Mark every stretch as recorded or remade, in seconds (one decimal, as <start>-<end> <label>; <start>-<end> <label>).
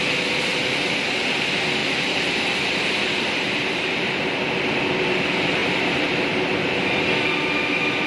0.0-1.8 recorded; 1.8-4.2 remade; 4.2-5.6 recorded; 5.6-6.4 remade; 6.4-8.1 recorded